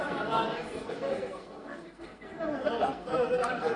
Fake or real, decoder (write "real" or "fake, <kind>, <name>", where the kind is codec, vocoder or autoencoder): fake, codec, SNAC